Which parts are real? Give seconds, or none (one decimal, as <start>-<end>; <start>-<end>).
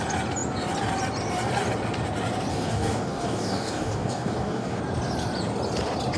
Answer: 0.0-2.5; 4.8-6.2